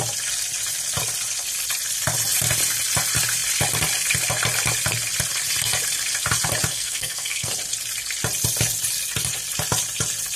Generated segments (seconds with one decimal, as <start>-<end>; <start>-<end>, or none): 6.7-7.5